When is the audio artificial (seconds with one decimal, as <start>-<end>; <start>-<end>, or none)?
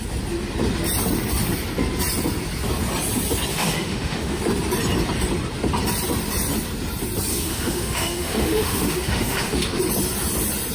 3.5-4.4; 7.3-9.8